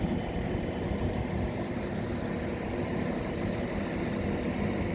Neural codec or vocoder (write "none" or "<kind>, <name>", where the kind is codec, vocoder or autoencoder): none